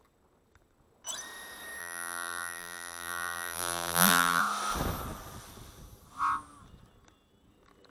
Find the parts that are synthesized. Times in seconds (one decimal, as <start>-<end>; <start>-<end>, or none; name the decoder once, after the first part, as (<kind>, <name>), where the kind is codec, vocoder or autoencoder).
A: 1.8-4.4 (vocoder, BigVGAN v2)